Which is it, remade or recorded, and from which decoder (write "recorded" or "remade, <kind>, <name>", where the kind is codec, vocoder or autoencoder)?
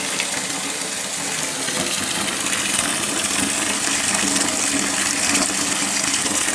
recorded